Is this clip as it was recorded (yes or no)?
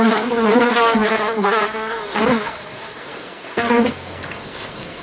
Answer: no